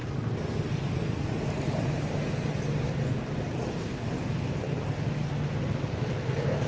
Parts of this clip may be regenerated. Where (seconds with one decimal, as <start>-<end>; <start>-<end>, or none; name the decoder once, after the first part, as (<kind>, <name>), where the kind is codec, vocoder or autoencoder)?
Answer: none